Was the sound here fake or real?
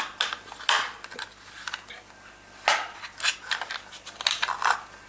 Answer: real